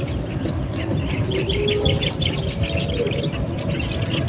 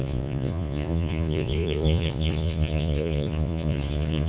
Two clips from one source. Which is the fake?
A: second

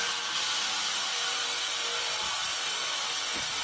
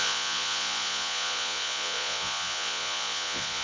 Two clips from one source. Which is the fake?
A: second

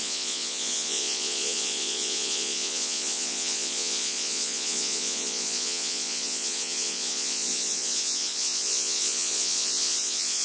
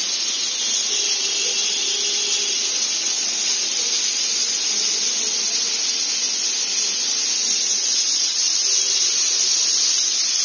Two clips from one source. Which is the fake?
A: first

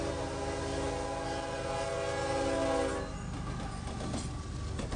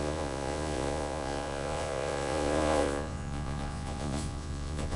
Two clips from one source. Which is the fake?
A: second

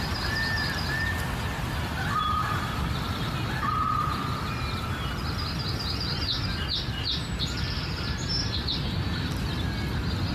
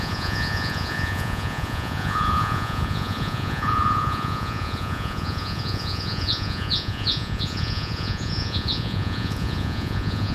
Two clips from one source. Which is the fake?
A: second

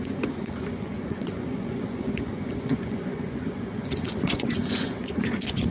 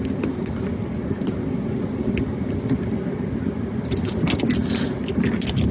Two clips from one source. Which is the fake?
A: first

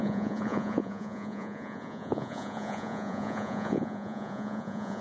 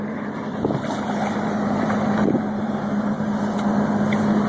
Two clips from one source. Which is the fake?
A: first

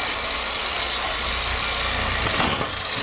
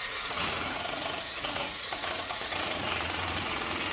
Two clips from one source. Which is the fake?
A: second